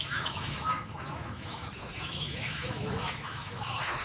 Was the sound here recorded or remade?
remade